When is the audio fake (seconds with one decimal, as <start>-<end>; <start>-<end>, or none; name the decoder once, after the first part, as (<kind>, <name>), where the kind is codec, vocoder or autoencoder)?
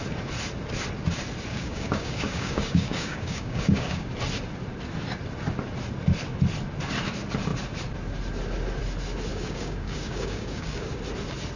1.5-4.1 (codec, DAC); 9.3-11.0